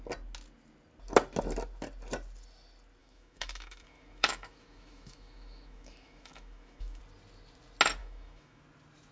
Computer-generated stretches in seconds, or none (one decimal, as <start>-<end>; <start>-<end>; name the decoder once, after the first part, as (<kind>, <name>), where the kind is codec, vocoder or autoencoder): 3.0-7.0 (autoencoder, DAC-VAE); 8.0-8.6